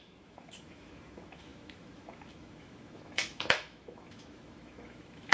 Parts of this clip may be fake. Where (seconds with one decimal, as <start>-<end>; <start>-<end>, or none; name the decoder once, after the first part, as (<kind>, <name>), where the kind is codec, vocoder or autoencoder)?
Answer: 0.0-5.3 (autoencoder, DAC-VAE)